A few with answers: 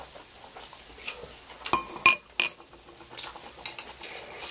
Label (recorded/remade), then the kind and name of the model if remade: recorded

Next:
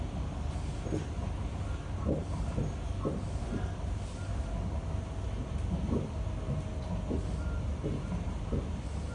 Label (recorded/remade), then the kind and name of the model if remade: recorded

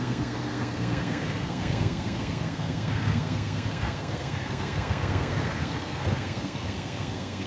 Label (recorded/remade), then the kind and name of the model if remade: remade, codec, SNAC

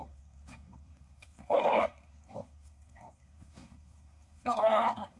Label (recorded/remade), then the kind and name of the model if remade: remade, codec, SNAC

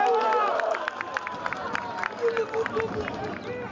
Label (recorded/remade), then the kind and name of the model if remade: recorded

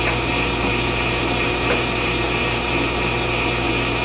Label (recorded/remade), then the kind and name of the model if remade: recorded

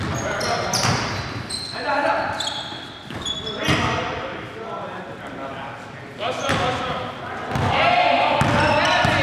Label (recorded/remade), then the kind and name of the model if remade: recorded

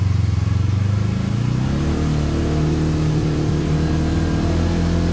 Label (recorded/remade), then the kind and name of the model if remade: recorded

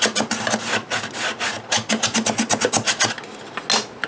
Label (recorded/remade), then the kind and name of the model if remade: recorded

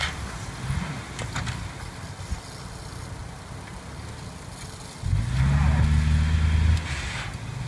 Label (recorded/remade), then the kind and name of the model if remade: recorded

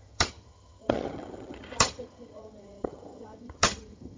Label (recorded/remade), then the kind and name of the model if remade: remade, vocoder, HiFi-GAN